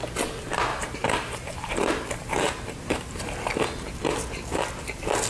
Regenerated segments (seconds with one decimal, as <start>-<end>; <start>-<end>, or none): 0.7-3.9